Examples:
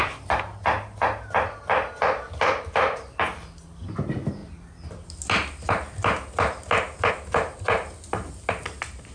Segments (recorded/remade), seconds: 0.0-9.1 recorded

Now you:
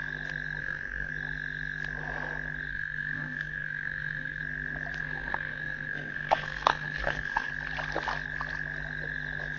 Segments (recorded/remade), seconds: 0.0-0.6 recorded; 0.6-1.1 remade; 1.1-2.7 recorded; 2.7-4.4 remade; 4.4-5.0 recorded; 5.0-7.5 remade; 7.5-9.6 recorded

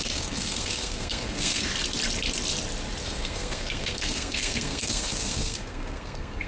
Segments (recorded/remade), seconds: 0.0-1.7 remade; 1.7-3.0 recorded; 3.0-6.5 remade

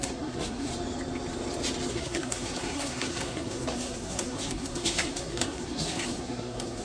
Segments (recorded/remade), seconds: 0.0-0.7 remade; 0.7-1.9 recorded; 1.9-6.8 remade